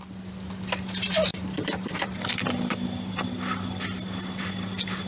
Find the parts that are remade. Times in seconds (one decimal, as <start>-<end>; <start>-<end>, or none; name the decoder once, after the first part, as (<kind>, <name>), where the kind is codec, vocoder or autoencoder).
1.3-4.4 (vocoder, BigVGAN v2)